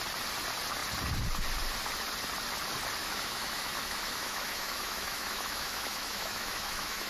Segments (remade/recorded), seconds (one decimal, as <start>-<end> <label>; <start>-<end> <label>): 0.0-3.0 recorded; 3.0-7.1 remade